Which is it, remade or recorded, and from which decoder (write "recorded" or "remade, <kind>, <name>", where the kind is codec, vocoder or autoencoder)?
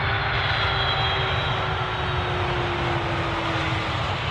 recorded